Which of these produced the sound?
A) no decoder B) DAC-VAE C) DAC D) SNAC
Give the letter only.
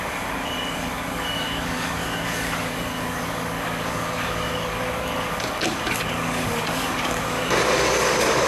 C